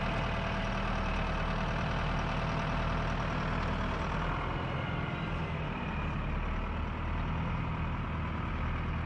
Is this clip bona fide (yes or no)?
yes